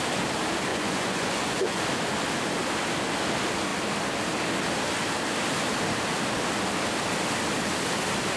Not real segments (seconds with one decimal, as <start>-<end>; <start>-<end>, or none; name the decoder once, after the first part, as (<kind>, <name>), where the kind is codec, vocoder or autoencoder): 0.7-1.8 (vocoder, Vocos)